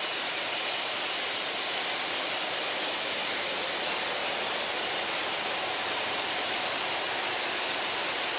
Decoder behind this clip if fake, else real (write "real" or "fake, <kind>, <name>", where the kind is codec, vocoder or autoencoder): real